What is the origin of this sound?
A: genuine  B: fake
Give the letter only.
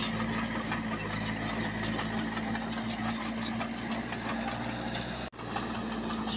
A